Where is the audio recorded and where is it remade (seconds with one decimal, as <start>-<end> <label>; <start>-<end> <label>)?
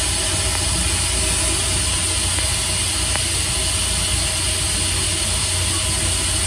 0.0-6.5 recorded